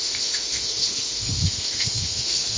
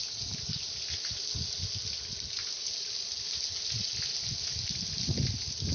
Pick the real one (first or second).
second